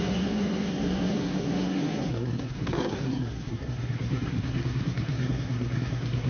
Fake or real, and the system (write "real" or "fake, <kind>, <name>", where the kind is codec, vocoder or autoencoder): fake, codec, SNAC